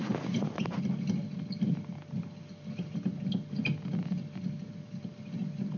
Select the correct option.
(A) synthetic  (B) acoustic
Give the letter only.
B